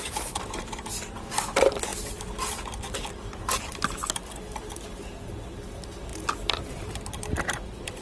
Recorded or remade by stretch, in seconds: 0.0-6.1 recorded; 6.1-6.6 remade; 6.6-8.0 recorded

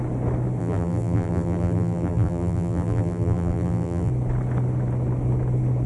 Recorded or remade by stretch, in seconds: 0.0-0.6 recorded; 0.6-4.1 remade; 4.1-5.9 recorded

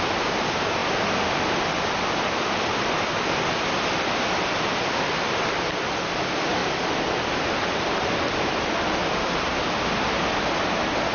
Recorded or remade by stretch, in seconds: 0.0-6.6 recorded; 6.6-7.6 remade; 7.6-9.0 recorded; 9.0-9.6 remade; 9.6-11.1 recorded

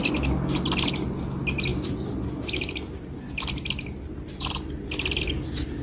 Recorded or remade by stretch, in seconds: 0.0-5.8 recorded

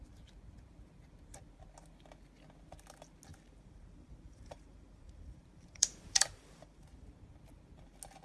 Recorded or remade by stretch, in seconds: 0.0-3.3 recorded; 3.3-7.1 remade; 7.1-8.2 recorded